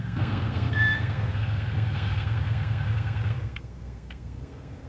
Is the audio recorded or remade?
remade